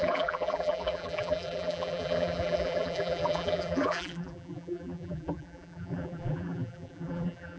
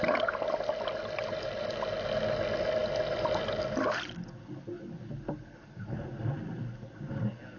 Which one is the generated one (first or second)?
first